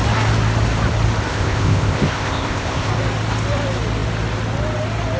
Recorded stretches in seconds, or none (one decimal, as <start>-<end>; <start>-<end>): 0.0-1.3; 2.9-5.2